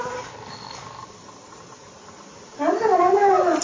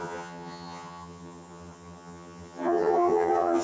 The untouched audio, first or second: first